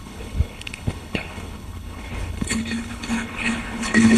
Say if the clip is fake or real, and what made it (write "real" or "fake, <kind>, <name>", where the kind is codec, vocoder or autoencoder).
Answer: fake, codec, HILCodec